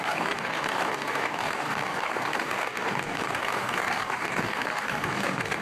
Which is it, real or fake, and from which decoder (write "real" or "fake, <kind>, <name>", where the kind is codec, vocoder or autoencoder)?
fake, codec, DAC